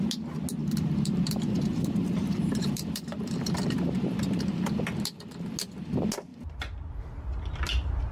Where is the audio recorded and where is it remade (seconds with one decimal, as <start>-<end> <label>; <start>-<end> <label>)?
0.0-0.6 recorded; 0.6-4.8 remade; 4.8-6.3 recorded; 6.3-7.0 remade; 7.0-8.1 recorded

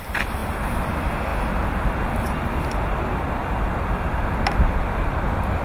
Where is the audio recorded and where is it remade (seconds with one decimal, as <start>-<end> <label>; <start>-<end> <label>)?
0.0-1.3 remade; 1.3-1.9 recorded; 1.9-5.6 remade

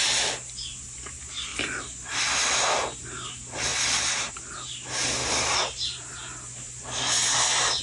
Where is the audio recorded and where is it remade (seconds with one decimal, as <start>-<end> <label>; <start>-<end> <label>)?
0.0-7.8 recorded

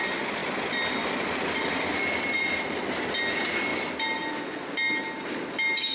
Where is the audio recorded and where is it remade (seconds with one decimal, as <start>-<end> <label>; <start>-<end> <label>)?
0.0-0.4 recorded; 0.4-1.7 remade; 1.7-5.9 recorded

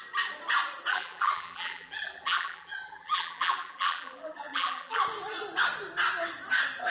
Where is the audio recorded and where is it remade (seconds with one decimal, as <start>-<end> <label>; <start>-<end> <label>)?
0.0-0.9 recorded; 0.9-5.0 remade; 5.0-6.9 recorded

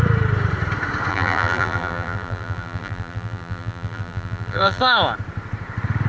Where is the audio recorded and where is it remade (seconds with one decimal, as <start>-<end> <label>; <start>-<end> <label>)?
0.0-1.1 recorded; 1.1-4.8 remade; 4.8-6.1 recorded

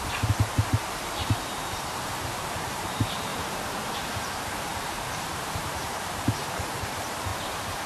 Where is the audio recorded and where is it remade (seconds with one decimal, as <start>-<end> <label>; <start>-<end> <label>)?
0.0-3.3 remade; 3.3-4.2 recorded; 4.2-7.3 remade; 7.3-7.9 recorded